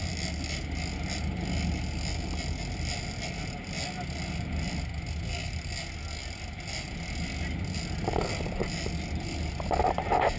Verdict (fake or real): real